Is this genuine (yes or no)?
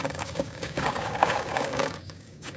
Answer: no